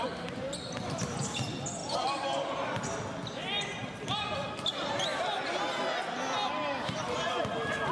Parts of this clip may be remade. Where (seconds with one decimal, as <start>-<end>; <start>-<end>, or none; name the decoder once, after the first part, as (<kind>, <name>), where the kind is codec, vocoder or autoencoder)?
none